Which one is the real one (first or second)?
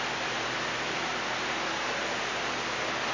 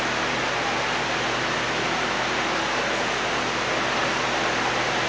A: second